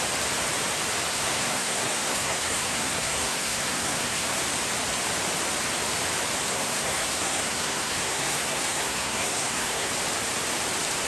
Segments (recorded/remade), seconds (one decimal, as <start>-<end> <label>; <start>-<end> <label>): 0.0-1.1 recorded; 1.1-4.4 remade; 4.4-6.5 recorded; 6.5-9.9 remade; 9.9-11.1 recorded